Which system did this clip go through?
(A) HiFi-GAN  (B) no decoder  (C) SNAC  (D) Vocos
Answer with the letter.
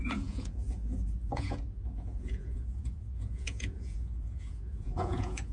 D